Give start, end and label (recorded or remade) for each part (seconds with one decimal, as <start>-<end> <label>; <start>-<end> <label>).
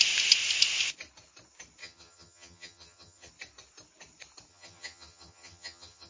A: 0.0-1.8 recorded; 1.8-3.3 remade; 3.3-4.5 recorded; 4.5-6.1 remade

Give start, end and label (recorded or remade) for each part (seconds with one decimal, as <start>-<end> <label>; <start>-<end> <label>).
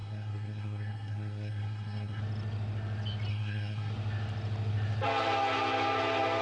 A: 0.0-2.2 remade; 2.2-3.3 recorded; 3.3-3.9 remade; 3.9-6.4 recorded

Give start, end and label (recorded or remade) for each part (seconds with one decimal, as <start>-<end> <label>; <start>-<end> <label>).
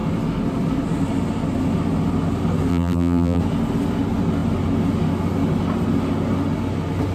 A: 0.0-2.7 recorded; 2.7-3.4 remade; 3.4-7.1 recorded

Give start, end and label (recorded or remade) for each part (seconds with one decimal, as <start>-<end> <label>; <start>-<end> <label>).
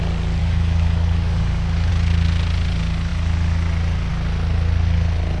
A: 0.0-0.4 recorded; 0.4-1.9 remade; 1.9-5.4 recorded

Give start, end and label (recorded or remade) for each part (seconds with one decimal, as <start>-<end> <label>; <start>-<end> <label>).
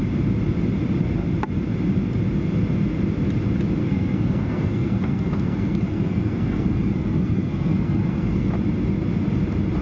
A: 0.0-3.8 recorded; 3.8-8.5 remade; 8.5-9.8 recorded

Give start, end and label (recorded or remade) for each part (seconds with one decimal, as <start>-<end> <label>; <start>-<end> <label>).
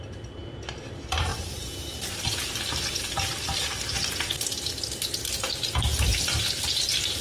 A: 0.0-7.2 recorded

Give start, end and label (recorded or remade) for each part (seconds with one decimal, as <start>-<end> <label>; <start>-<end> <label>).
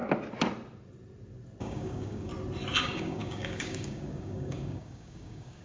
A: 0.0-1.6 recorded; 1.6-2.3 remade; 2.3-2.8 recorded; 2.8-5.6 remade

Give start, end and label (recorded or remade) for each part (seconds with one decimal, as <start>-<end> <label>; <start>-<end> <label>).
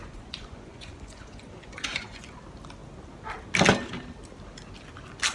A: 0.0-2.4 remade; 2.4-5.3 recorded